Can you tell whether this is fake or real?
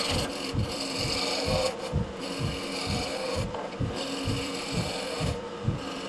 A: fake